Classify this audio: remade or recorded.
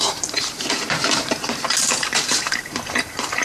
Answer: remade